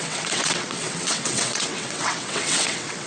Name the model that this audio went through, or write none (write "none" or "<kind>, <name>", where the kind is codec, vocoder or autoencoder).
vocoder, WaveNeXt